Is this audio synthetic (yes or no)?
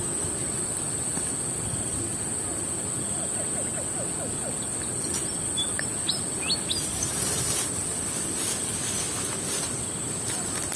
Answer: no